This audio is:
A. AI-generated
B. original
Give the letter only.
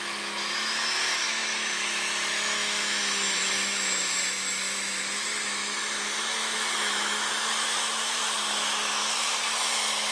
A